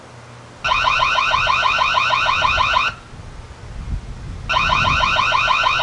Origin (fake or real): real